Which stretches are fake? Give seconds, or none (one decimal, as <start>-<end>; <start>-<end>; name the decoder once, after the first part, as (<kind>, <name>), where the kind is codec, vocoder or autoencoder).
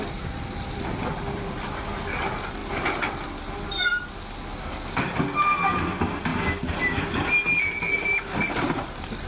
0.0-2.2 (vocoder, BigVGAN v2)